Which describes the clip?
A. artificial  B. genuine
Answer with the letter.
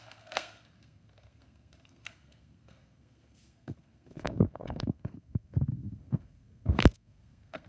A